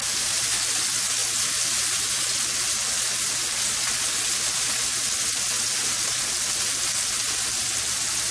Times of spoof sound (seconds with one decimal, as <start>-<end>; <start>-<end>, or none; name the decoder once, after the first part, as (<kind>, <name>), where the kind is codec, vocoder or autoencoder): none